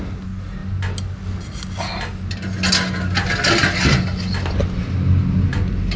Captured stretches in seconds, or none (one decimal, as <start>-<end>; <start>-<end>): 0.0-6.0